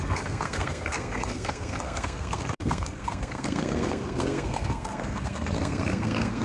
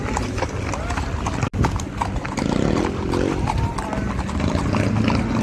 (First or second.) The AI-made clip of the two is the first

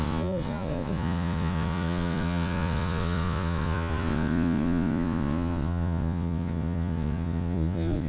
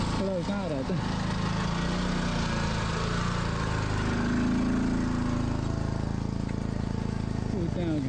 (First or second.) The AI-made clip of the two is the first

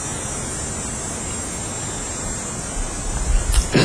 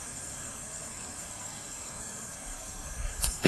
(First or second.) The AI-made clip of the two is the second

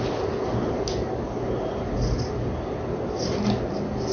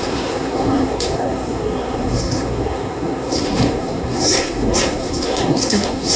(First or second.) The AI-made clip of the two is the second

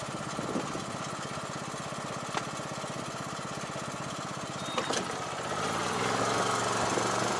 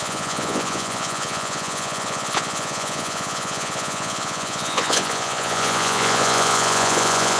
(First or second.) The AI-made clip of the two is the second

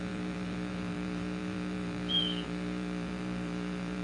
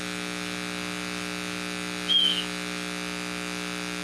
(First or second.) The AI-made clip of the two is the first